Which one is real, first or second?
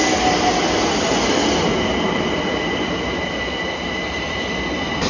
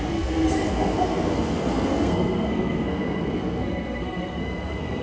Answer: first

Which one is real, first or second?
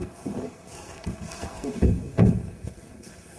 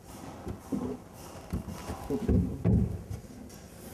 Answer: second